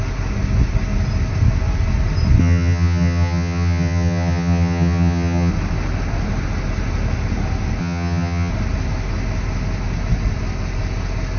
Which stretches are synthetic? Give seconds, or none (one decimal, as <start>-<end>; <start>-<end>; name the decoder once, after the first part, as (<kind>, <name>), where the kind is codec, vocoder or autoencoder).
2.4-5.5 (vocoder, HiFi-GAN); 7.8-8.5